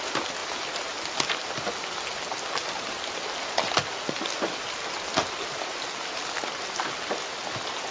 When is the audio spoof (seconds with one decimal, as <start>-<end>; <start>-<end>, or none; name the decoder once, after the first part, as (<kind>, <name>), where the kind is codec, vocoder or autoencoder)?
none